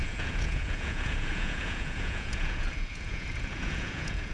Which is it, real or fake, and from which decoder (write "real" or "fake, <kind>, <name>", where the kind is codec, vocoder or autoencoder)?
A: fake, vocoder, Vocos